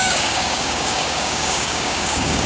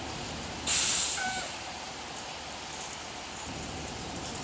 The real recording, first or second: second